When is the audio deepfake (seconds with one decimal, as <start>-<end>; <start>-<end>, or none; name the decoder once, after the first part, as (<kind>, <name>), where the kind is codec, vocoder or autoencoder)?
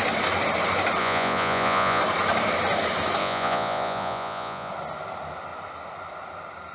1.0-2.0 (vocoder, Vocos); 3.2-4.7